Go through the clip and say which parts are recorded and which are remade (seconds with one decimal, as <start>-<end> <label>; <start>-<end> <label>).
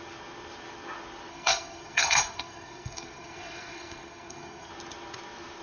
0.0-1.3 recorded; 1.3-4.7 remade; 4.7-5.6 recorded